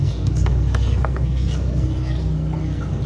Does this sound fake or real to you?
fake